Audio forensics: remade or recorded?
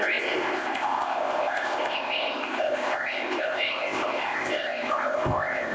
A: remade